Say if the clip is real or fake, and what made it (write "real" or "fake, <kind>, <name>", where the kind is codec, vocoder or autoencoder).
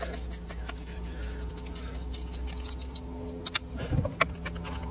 real